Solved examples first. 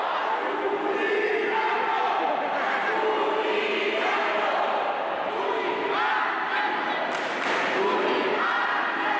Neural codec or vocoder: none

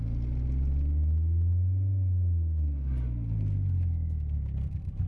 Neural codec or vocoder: none